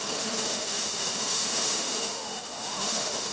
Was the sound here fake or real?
fake